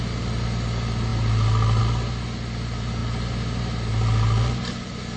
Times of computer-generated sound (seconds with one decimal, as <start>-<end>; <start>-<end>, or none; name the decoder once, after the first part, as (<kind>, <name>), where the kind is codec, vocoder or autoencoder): none